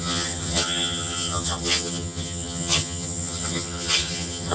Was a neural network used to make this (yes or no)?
yes